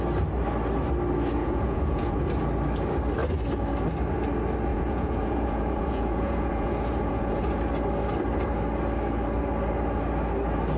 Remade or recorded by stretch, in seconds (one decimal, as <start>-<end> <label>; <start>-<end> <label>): 0.0-1.4 recorded; 1.4-2.2 remade; 2.2-4.7 recorded; 4.7-7.4 remade; 7.4-10.8 recorded